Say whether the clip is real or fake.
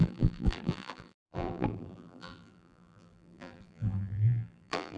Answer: fake